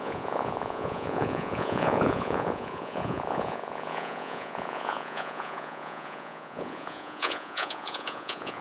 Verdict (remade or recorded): remade